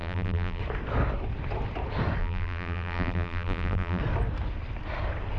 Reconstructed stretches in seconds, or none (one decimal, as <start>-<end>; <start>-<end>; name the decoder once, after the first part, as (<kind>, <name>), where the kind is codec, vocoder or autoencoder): 0.0-0.6 (vocoder, BigVGAN v2); 2.2-4.0